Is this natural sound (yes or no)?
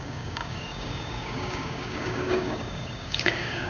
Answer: no